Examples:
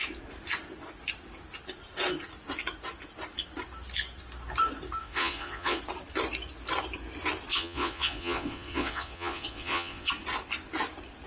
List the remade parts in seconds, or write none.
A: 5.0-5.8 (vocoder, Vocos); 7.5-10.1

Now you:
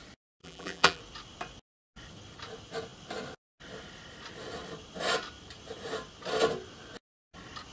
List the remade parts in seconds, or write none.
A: 0.4-1.0 (vocoder, BigVGAN v2)

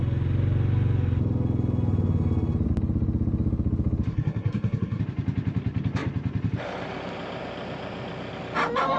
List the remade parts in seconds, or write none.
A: 4.1-5.0 (codec, SNAC)